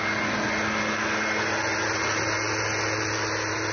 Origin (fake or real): real